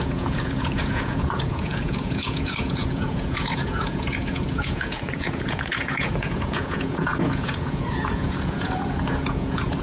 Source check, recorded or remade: remade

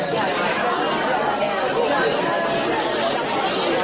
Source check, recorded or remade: recorded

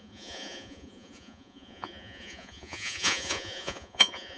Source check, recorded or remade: remade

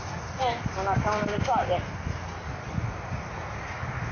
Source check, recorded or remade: recorded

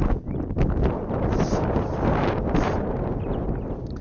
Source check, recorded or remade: recorded